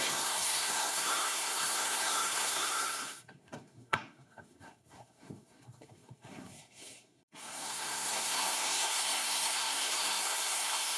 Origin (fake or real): fake